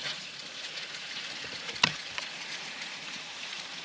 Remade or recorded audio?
remade